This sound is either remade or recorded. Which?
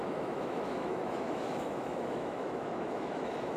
remade